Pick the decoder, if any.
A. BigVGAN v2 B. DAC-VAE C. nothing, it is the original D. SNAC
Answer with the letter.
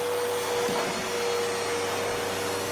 C